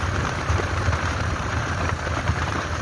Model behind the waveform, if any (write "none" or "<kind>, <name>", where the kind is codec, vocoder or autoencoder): vocoder, BigVGAN v2